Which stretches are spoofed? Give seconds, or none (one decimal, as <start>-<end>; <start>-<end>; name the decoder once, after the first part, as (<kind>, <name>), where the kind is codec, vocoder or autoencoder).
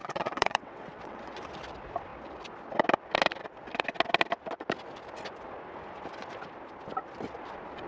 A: 0.0-1.4 (vocoder, WaveNeXt)